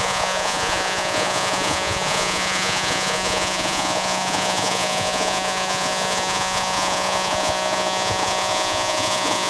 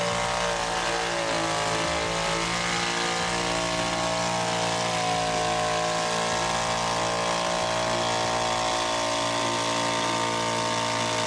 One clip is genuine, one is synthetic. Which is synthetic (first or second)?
first